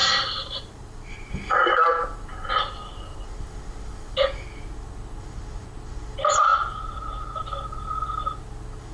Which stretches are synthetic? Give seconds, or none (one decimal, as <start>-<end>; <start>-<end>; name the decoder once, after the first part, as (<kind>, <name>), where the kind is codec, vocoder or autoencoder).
0.0-1.3 (vocoder, BigVGAN v2); 6.5-7.4